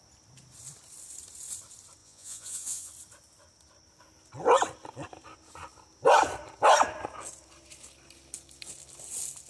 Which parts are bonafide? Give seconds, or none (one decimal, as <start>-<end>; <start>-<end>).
0.0-2.0; 2.9-9.5